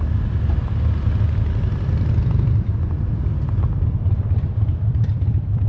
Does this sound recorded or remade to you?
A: recorded